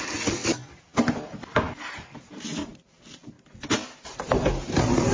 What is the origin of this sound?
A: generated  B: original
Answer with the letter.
B